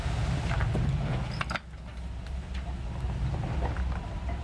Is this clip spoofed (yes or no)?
no